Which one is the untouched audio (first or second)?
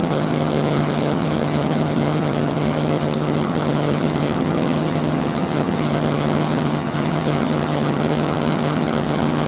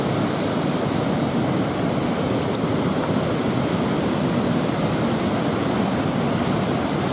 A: second